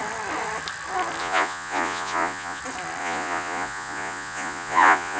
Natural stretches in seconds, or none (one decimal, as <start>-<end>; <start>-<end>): 0.0-1.2; 2.6-3.0